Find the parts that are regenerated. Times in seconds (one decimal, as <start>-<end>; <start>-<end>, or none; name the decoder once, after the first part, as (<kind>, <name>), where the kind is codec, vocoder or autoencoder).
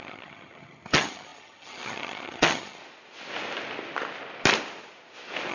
0.0-2.8 (vocoder, HiFi-GAN)